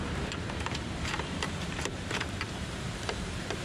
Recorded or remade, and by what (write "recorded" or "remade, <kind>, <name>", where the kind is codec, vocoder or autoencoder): remade, vocoder, BigVGAN v2